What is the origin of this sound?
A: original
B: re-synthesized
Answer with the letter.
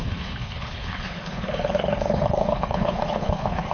B